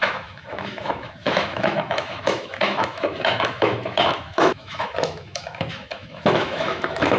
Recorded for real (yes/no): no